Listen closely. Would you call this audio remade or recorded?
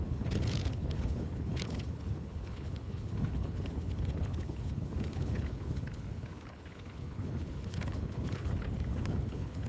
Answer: remade